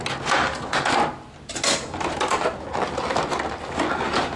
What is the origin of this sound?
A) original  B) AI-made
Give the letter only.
A